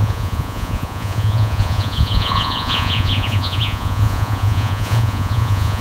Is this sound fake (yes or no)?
yes